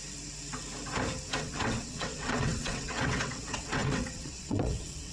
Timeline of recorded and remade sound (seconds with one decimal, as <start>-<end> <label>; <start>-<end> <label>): 0.0-1.4 recorded; 1.4-5.1 remade